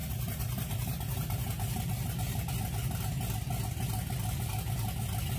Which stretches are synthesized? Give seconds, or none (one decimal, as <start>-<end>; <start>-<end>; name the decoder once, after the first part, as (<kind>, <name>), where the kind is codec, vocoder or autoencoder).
0.0-2.5 (vocoder, BigVGAN v2)